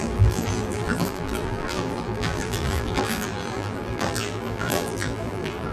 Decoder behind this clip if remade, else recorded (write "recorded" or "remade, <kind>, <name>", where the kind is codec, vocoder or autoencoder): remade, vocoder, BigVGAN v2